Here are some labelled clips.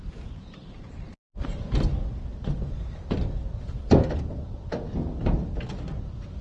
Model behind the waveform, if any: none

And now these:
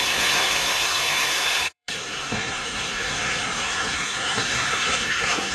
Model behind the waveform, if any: codec, SNAC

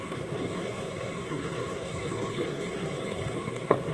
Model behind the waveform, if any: codec, SNAC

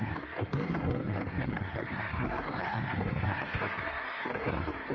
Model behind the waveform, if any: codec, SNAC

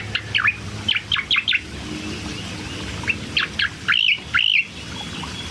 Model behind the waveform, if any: none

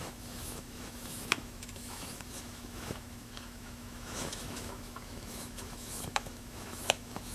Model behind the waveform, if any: autoencoder, DAC-VAE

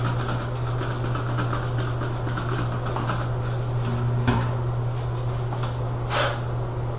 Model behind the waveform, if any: none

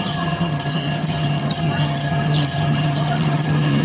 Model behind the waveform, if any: vocoder, HiFi-GAN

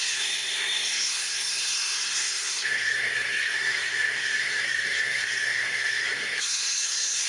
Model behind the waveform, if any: codec, SNAC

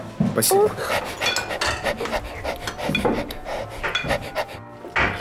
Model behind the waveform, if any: none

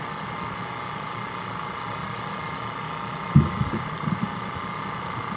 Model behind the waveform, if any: none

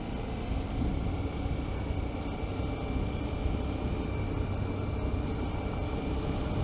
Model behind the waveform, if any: none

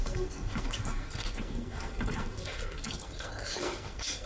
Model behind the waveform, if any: codec, SNAC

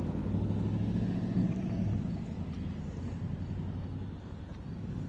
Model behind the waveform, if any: none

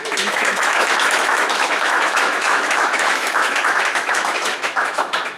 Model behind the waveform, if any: autoencoder, DAC-VAE